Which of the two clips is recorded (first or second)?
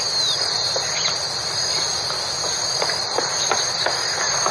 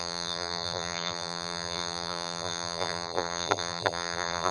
first